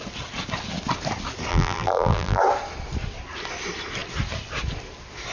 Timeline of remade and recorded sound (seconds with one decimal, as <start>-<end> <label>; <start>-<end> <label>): 0.0-1.5 recorded; 1.5-2.4 remade; 2.4-5.3 recorded